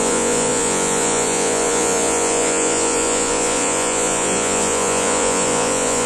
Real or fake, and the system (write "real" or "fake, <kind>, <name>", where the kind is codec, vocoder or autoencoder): fake, vocoder, Vocos